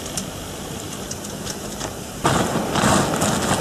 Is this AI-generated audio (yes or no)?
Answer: no